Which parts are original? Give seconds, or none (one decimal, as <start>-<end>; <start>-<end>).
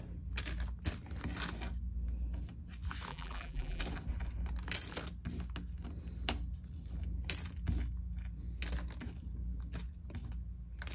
0.0-3.1; 3.8-10.9